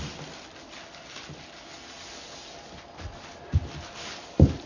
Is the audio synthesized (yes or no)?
no